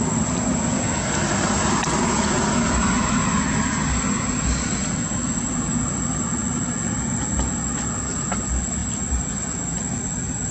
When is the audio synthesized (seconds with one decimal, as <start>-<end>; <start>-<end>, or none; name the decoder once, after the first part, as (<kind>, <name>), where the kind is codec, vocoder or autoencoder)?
8.8-9.4 (vocoder, BigVGAN v2)